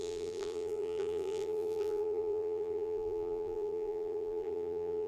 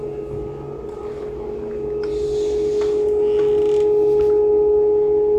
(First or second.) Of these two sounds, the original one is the second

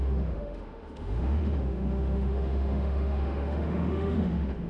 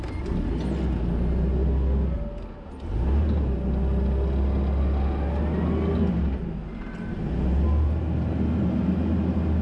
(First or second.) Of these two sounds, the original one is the second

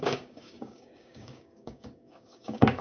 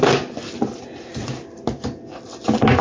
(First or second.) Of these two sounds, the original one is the second